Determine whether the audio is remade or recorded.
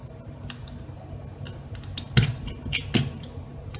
recorded